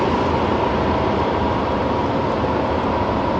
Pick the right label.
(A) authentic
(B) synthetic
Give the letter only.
A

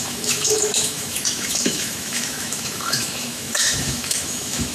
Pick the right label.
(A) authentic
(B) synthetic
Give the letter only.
B